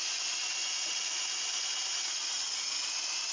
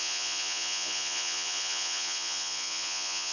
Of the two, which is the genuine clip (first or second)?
first